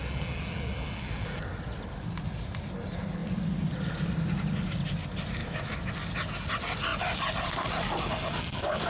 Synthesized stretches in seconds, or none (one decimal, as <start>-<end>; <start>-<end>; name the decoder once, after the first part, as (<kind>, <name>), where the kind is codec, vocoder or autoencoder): 5.4-5.9 (autoencoder, DAC-VAE)